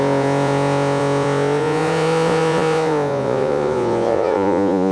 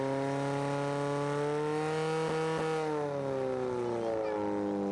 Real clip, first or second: second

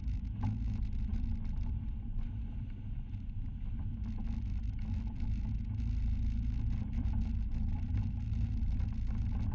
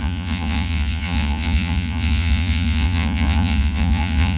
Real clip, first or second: first